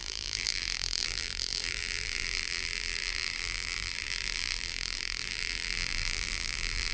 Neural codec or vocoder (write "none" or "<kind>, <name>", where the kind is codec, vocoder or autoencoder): vocoder, BigVGAN v2